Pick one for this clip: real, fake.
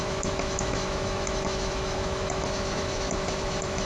fake